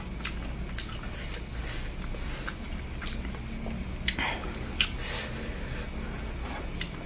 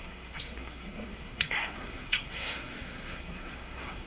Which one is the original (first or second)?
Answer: first